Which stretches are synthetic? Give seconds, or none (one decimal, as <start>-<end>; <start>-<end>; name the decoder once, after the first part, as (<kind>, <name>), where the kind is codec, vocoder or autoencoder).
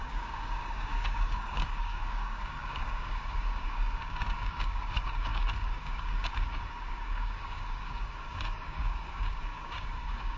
0.0-10.4 (codec, DAC)